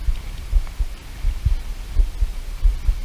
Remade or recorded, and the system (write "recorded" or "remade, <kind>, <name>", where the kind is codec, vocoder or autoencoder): recorded